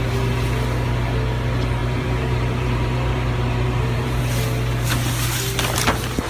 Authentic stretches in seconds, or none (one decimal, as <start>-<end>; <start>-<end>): 0.0-1.8; 4.2-6.3